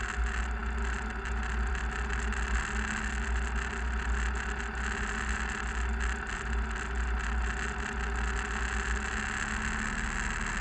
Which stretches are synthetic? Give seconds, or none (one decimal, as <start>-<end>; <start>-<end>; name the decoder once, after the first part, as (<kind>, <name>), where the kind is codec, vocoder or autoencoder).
none

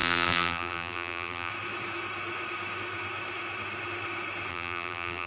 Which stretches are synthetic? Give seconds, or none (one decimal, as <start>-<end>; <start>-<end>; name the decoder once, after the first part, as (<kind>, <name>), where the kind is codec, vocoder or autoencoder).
0.0-1.5 (vocoder, BigVGAN v2); 4.5-5.3

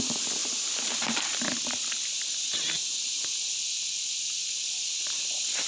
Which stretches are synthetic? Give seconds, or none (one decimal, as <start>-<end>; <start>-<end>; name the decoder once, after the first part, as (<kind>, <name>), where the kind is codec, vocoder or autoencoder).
0.4-3.8 (vocoder, BigVGAN v2)

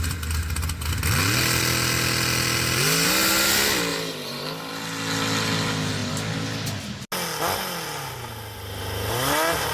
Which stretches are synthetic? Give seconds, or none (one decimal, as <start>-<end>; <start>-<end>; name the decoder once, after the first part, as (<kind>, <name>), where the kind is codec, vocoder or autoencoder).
3.9-4.7 (vocoder, BigVGAN v2)

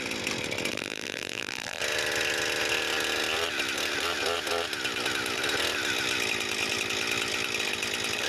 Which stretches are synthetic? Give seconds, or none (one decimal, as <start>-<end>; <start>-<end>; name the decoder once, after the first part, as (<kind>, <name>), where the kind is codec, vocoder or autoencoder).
0.7-1.8 (vocoder, BigVGAN v2)